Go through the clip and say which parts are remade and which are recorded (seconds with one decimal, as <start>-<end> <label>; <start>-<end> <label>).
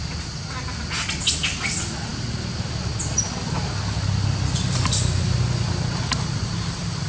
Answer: 0.0-7.1 recorded